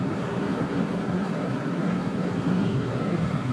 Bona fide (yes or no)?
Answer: no